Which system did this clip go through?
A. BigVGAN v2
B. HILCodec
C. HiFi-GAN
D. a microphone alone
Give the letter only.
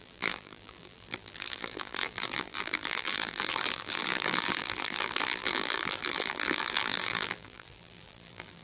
A